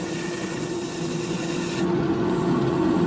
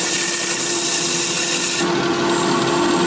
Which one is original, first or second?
second